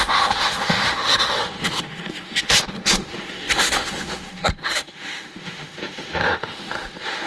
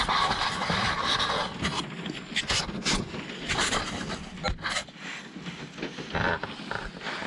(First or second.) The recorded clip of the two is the second